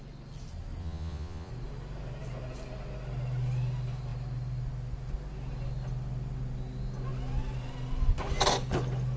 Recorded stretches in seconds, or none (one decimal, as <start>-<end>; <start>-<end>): 0.0-0.8; 1.5-9.2